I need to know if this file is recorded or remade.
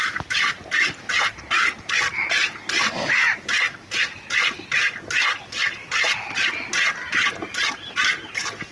recorded